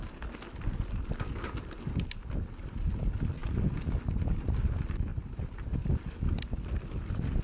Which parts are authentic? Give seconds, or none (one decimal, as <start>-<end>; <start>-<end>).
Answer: 0.0-5.1; 6.4-7.4